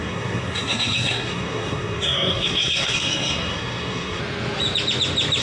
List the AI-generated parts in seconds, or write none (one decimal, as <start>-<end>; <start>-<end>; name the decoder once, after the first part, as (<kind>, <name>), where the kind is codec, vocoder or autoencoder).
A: 0.0-4.2 (codec, SNAC)